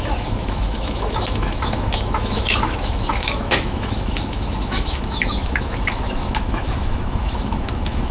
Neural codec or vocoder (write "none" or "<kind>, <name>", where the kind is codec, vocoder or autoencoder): autoencoder, DAC-VAE